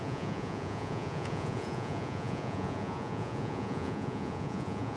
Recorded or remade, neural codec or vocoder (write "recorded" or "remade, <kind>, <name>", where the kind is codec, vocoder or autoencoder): remade, vocoder, Vocos